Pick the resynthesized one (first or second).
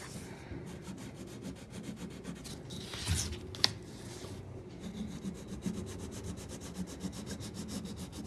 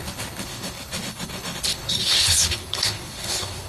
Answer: second